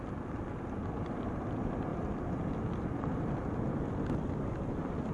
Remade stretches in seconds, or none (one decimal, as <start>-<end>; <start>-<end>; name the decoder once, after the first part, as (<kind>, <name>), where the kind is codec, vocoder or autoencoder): none